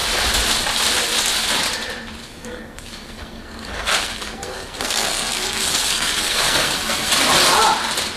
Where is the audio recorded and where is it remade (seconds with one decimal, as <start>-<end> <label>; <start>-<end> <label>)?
0.0-2.2 recorded; 2.2-7.1 remade; 7.1-8.2 recorded